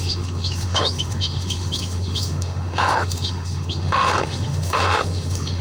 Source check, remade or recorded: remade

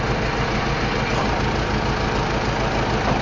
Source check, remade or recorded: recorded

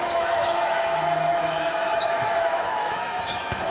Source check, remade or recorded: remade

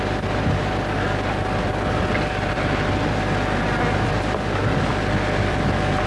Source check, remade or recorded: recorded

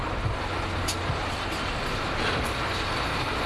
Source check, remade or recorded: recorded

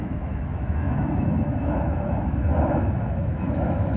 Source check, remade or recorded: remade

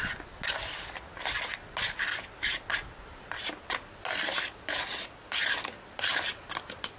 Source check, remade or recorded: recorded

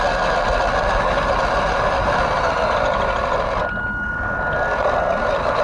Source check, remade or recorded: recorded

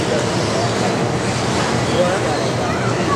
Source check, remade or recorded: recorded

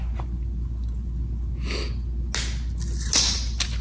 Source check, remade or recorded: recorded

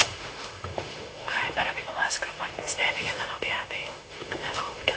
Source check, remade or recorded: remade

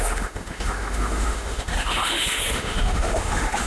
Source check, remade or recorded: remade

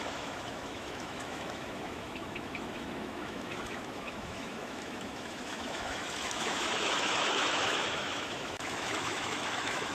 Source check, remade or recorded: remade